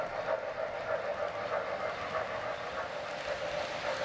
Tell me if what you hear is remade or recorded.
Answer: recorded